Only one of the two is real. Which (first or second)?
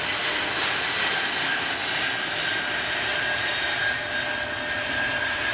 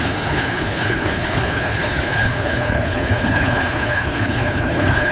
first